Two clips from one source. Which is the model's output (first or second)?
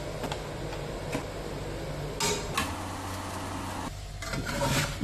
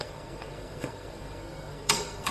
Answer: second